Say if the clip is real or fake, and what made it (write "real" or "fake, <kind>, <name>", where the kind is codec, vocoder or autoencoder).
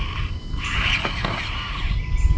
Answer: real